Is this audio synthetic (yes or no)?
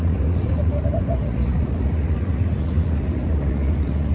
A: yes